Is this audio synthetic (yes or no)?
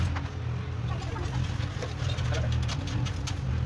no